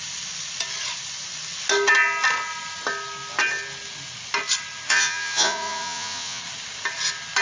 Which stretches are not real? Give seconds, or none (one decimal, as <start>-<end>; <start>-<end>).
4.9-6.4